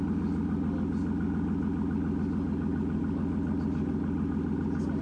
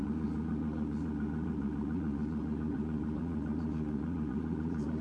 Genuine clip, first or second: first